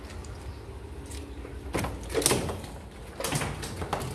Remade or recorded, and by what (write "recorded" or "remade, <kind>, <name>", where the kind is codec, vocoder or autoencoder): recorded